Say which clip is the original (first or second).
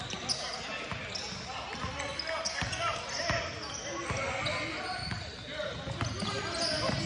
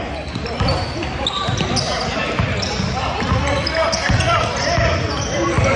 first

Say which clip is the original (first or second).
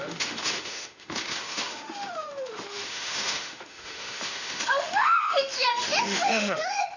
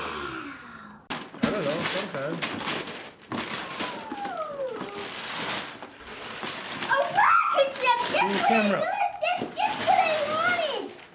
second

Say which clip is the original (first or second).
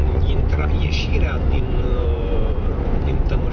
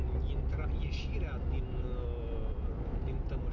second